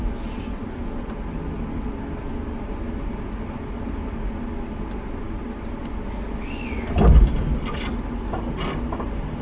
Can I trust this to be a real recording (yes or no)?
yes